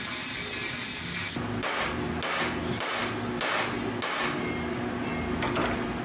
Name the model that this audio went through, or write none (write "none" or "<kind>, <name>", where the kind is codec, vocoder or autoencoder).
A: none